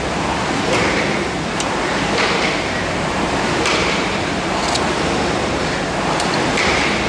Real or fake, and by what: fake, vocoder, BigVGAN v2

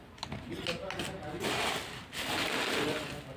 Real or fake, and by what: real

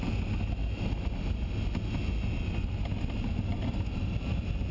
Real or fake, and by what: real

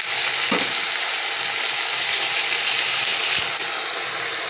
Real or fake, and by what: real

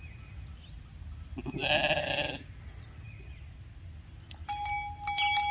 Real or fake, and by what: real